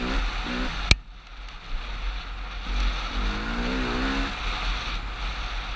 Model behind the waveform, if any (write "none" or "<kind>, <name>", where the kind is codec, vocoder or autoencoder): none